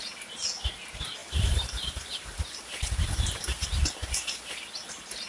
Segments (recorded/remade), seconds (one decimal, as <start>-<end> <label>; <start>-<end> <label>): 0.0-1.2 recorded; 1.2-4.4 remade; 4.4-5.3 recorded